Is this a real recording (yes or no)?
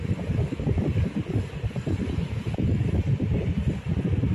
yes